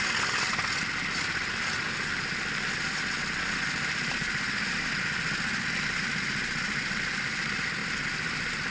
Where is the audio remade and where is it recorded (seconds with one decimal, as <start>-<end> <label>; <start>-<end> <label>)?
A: 0.0-8.7 recorded